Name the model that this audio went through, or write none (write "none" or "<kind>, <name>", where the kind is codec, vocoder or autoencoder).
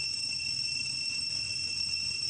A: none